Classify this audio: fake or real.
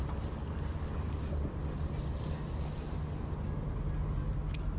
real